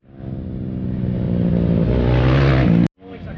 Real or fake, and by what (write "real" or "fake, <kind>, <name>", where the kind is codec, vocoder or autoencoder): real